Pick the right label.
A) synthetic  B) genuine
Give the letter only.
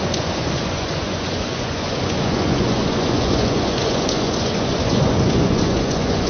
A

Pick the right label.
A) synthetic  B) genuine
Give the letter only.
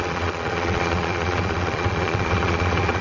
A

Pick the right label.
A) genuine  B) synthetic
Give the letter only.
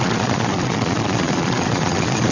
B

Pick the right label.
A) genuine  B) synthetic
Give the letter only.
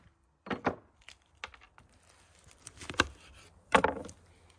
A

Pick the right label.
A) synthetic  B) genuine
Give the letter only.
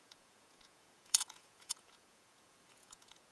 A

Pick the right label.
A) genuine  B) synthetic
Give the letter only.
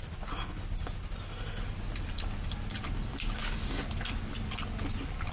A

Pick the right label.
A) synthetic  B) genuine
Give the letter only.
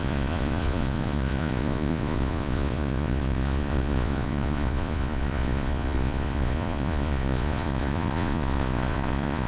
A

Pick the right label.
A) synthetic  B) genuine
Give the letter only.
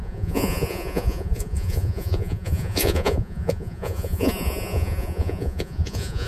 A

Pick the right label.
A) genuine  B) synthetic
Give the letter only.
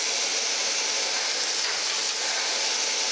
A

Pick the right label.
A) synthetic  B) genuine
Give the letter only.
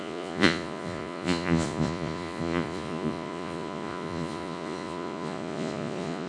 A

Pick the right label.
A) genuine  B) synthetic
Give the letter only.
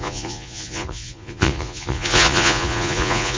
B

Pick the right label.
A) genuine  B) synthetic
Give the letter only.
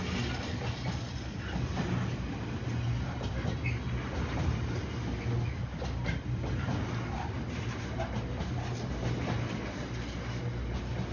A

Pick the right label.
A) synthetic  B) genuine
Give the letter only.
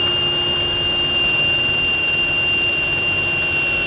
B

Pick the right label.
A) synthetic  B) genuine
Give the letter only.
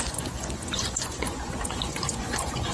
A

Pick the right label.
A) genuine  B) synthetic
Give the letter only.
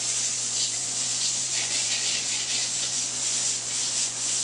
B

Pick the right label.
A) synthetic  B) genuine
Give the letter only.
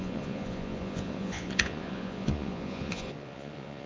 A